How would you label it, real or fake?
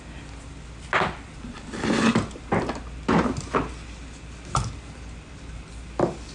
real